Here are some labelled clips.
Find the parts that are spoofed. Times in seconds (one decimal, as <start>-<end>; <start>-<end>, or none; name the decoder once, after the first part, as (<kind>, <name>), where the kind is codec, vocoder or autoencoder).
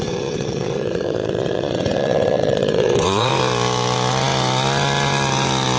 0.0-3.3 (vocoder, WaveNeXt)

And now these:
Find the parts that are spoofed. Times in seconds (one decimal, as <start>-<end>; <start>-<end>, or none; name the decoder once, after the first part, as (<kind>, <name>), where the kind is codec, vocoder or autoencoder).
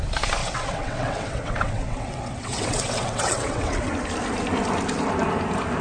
0.4-3.9 (vocoder, WaveNeXt)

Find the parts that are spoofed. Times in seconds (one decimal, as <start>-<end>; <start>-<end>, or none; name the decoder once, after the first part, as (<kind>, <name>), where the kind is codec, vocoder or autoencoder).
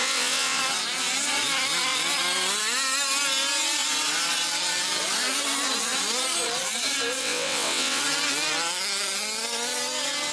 0.0-0.6 (vocoder, WaveNeXt); 7.2-8.0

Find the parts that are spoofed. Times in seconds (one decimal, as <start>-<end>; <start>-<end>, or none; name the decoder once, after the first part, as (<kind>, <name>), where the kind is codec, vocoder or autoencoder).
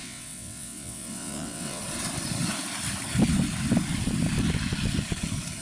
0.0-1.8 (vocoder, WaveNeXt)